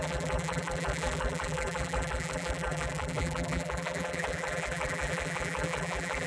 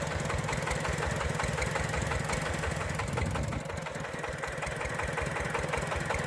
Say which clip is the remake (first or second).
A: first